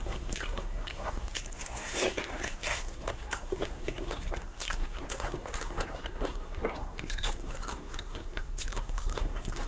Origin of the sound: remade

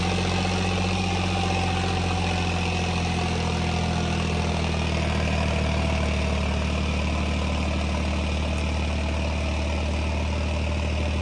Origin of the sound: recorded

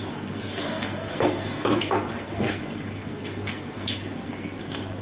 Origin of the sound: remade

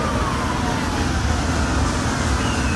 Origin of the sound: recorded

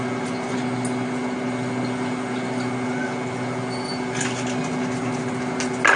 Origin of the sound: recorded